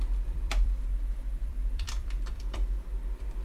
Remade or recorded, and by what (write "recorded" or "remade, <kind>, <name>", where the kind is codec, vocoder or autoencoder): remade, vocoder, BigVGAN v2